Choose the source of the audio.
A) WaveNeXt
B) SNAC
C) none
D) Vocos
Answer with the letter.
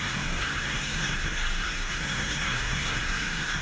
B